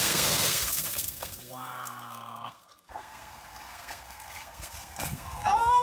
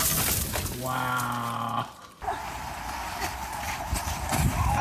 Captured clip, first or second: second